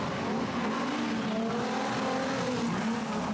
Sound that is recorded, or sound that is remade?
recorded